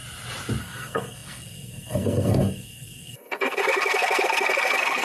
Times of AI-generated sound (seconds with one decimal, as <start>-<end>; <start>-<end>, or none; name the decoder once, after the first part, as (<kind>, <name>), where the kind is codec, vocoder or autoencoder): 0.6-5.0 (codec, SNAC)